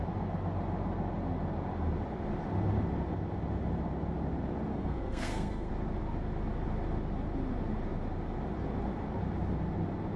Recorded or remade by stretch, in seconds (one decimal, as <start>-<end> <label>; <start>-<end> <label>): 0.0-4.7 recorded; 4.7-5.7 remade; 5.7-10.2 recorded